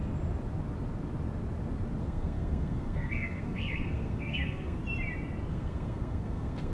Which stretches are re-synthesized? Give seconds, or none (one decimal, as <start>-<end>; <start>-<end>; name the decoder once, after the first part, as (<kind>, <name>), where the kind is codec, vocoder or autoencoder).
2.0-4.8 (codec, SNAC); 5.5-6.7